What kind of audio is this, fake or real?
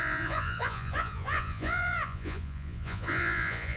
fake